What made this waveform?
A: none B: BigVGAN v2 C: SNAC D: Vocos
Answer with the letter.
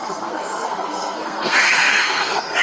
C